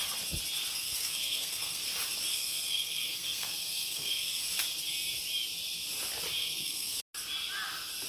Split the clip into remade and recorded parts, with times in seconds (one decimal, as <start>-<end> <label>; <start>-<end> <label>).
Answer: 0.0-0.7 recorded; 0.7-1.8 remade; 1.8-2.3 recorded; 2.3-4.4 remade; 4.4-6.4 recorded; 6.4-7.0 remade; 7.0-8.1 recorded